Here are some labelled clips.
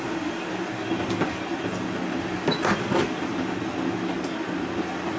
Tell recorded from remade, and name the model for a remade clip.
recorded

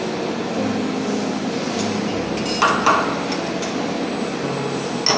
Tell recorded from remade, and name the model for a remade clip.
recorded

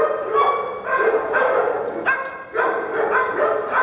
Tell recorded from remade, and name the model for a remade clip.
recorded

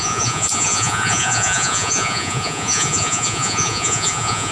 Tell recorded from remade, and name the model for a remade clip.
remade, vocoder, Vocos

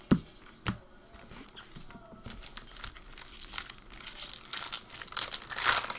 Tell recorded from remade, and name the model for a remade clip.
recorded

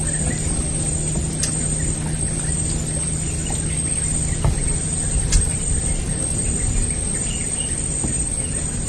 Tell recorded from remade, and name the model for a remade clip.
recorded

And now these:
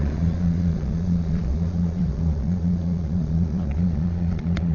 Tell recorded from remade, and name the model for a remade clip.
remade, vocoder, Vocos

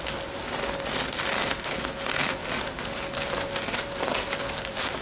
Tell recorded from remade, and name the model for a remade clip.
recorded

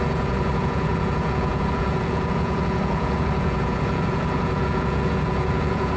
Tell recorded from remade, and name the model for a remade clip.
remade, vocoder, Vocos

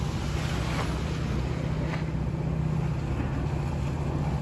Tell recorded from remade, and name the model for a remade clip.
recorded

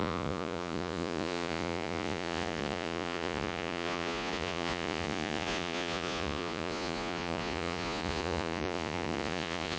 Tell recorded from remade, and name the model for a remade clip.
remade, vocoder, Vocos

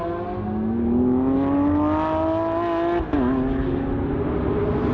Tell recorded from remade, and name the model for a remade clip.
recorded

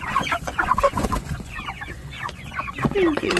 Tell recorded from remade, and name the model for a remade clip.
remade, vocoder, Vocos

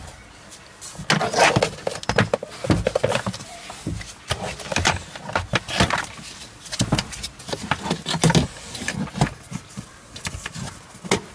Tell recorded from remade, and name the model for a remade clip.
recorded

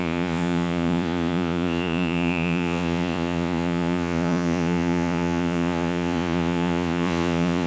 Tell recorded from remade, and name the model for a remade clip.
remade, vocoder, Vocos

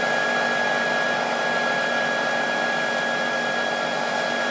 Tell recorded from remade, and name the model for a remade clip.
recorded